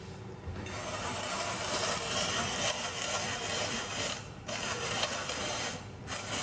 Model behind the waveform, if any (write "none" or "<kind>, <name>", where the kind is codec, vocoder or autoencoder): none